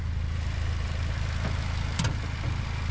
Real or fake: real